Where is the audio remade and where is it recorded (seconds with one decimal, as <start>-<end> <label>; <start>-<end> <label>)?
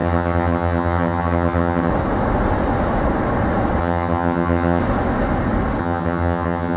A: 0.0-1.9 remade; 1.9-3.8 recorded; 3.8-4.8 remade; 4.8-5.8 recorded; 5.8-6.8 remade